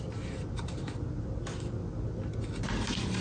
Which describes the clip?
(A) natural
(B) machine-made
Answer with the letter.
A